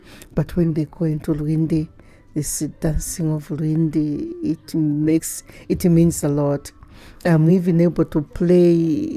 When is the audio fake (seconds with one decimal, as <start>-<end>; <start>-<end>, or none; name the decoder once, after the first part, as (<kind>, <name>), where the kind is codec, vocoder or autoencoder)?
0.0-1.2 (codec, SNAC); 4.6-5.2; 6.8-7.5